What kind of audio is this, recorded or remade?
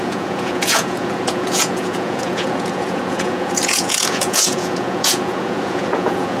remade